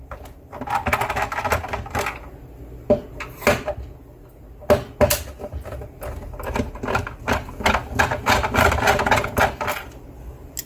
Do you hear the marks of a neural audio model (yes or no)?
no